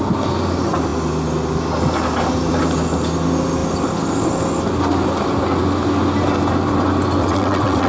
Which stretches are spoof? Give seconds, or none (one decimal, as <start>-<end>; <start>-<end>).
7.2-7.9